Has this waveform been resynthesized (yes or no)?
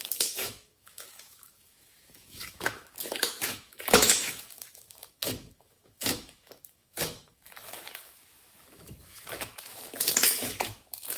yes